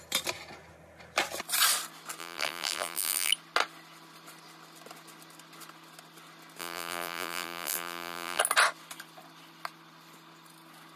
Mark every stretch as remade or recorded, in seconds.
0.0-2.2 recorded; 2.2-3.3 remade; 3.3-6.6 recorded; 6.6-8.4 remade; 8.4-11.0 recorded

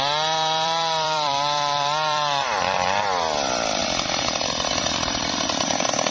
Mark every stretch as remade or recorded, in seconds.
0.0-6.1 remade

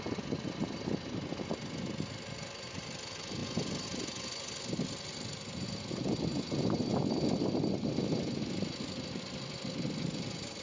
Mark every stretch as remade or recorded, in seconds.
0.0-10.6 recorded